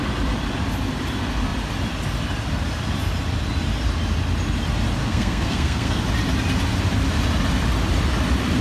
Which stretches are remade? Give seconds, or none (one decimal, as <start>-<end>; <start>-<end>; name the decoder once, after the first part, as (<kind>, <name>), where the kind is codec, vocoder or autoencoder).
5.0-6.0 (codec, SNAC)